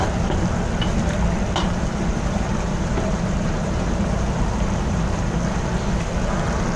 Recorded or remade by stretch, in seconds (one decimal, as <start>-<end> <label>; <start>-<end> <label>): 0.0-1.6 recorded; 1.6-5.3 remade; 5.3-6.8 recorded